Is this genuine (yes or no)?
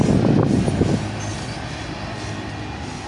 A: yes